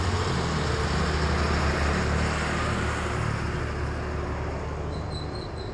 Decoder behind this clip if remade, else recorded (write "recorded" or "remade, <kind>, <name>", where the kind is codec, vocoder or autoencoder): recorded